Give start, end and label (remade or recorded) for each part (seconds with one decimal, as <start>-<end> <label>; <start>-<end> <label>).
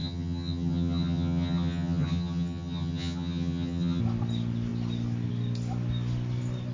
0.0-4.0 remade; 4.0-6.7 recorded